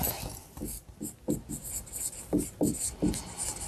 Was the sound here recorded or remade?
recorded